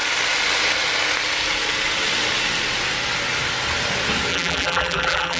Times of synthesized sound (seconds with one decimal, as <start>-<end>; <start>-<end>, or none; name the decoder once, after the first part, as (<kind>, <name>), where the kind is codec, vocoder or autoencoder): 4.3-5.4 (vocoder, BigVGAN v2)